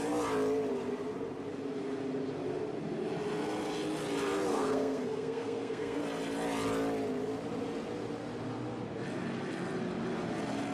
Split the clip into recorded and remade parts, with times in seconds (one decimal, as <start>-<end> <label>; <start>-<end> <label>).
0.0-4.5 recorded; 4.5-6.0 remade; 6.0-10.7 recorded